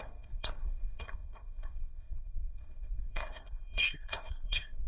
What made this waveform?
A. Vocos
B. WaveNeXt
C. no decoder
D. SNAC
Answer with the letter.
D